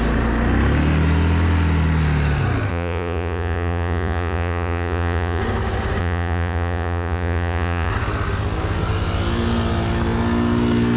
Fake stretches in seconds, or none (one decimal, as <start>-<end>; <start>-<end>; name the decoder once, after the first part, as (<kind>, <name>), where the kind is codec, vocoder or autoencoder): 2.7-5.4 (vocoder, Vocos); 6.0-7.9